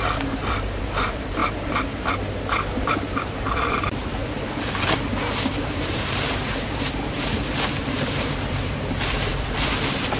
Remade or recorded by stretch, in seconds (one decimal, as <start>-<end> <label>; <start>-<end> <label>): 0.0-1.4 remade; 1.4-2.8 recorded; 2.8-4.2 remade; 4.2-5.6 recorded; 5.6-10.2 remade